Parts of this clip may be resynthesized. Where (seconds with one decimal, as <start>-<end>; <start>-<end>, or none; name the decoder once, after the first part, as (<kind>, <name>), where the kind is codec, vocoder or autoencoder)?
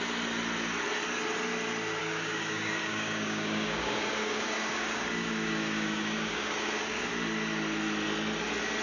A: 2.0-7.1 (codec, DAC)